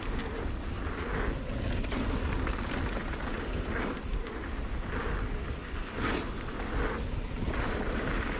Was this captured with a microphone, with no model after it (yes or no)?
yes